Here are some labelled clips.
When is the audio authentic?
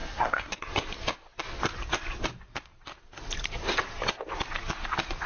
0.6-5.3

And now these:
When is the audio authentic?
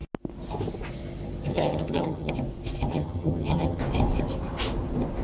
0.0-1.5; 2.3-2.9; 3.8-5.2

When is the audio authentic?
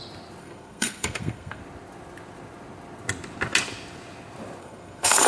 0.0-0.4; 1.6-4.6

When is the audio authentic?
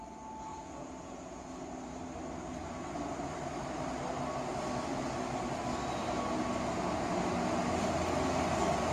0.0-0.5; 1.5-8.9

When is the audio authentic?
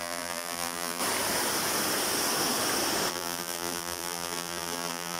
1.0-3.1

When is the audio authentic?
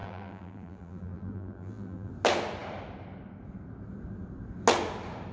2.1-5.3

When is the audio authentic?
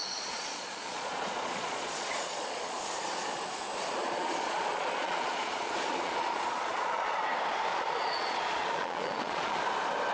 2.8-4.0; 7.2-7.7; 9.6-10.1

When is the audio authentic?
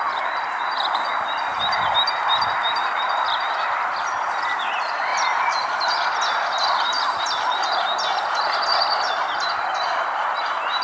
1.5-3.1